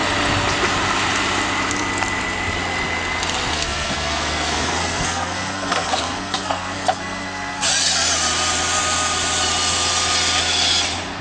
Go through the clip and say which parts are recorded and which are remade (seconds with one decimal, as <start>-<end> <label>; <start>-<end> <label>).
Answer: 0.0-3.5 recorded; 3.5-7.7 remade; 7.7-11.2 recorded